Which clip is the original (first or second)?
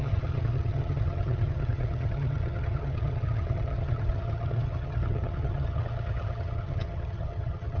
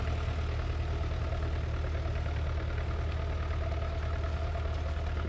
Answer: second